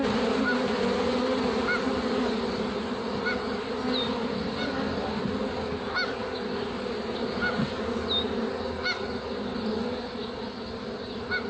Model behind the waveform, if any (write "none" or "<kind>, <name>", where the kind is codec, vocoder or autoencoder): none